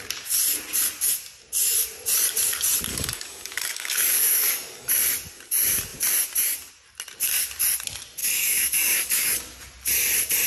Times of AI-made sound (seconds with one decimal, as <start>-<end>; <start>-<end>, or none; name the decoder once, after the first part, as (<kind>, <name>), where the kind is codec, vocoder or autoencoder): 2.9-4.9 (codec, DAC); 8.2-9.4